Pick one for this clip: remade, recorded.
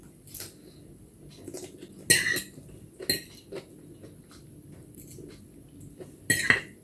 recorded